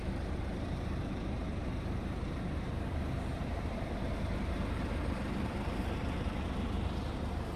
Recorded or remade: remade